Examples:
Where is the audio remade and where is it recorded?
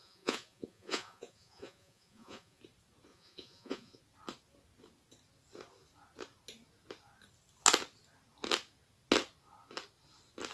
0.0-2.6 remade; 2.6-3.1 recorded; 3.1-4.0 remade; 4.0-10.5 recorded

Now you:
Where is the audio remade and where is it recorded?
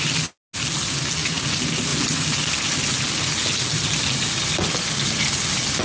0.0-5.8 recorded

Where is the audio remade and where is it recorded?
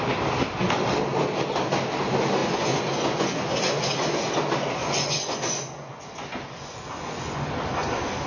0.0-2.4 recorded; 2.4-4.3 remade; 4.3-4.8 recorded; 4.8-7.5 remade; 7.5-8.3 recorded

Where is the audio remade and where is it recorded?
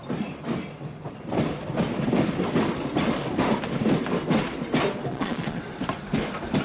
0.0-5.1 recorded; 5.1-5.6 remade; 5.6-6.6 recorded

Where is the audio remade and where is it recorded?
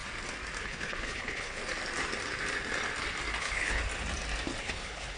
0.0-0.6 recorded; 0.6-1.6 remade; 1.6-3.4 recorded; 3.4-3.8 remade; 3.8-4.6 recorded; 4.6-5.2 remade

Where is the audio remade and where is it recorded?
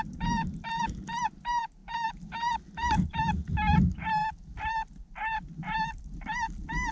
0.0-6.9 recorded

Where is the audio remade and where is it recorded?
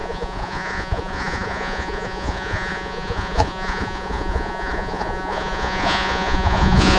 0.0-7.0 remade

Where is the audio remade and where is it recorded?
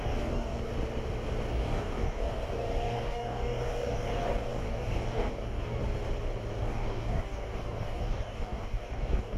0.0-0.7 remade; 0.7-1.5 recorded; 1.5-5.8 remade; 5.8-6.6 recorded; 6.6-9.4 remade